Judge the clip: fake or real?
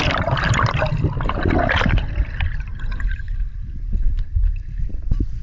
real